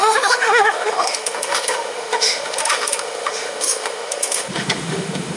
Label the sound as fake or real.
fake